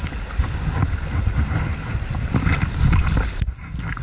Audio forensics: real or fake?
real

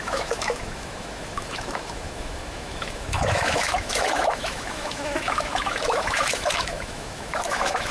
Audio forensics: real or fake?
fake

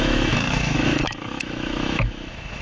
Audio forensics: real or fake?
fake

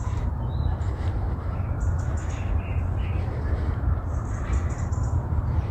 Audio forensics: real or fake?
fake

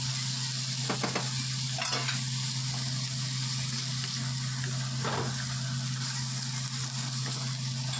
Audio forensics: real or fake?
real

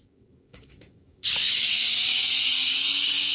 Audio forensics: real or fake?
fake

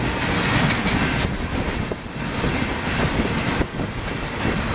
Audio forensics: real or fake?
real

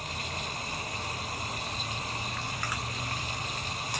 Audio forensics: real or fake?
real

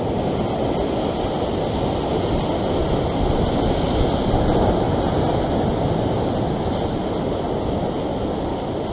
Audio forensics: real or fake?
real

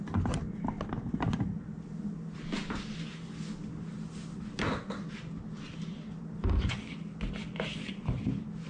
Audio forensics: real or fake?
real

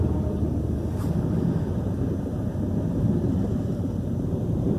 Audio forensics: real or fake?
fake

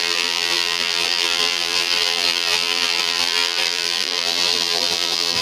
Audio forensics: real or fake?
fake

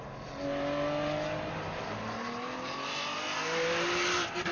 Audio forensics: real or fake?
real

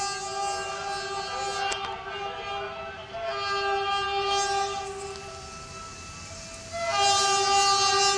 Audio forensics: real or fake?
real